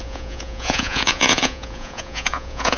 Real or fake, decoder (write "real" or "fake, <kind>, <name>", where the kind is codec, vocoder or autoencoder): fake, vocoder, Vocos